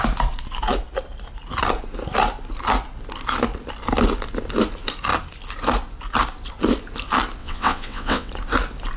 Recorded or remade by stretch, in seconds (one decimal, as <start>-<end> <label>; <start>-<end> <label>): 0.0-7.4 recorded; 7.4-8.3 remade; 8.3-9.0 recorded